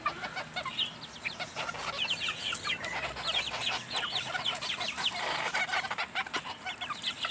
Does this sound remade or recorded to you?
recorded